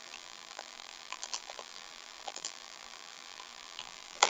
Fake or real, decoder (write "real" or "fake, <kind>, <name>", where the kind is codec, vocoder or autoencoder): fake, vocoder, BigVGAN v2